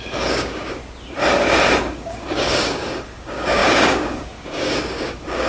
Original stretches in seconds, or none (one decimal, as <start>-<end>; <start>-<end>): 0.8-1.9